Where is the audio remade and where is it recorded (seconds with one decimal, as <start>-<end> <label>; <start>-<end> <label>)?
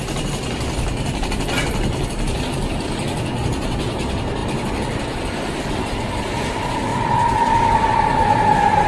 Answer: 0.0-4.4 recorded; 4.4-5.9 remade; 5.9-6.9 recorded; 6.9-8.5 remade; 8.5-8.9 recorded